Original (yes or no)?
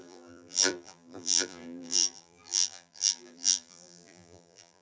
no